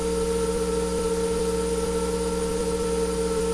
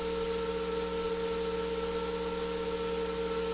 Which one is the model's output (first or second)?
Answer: first